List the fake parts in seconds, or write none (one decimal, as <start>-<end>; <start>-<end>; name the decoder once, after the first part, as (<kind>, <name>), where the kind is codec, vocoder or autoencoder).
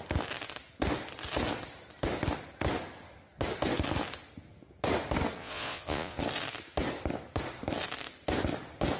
5.4-6.2 (vocoder, Vocos)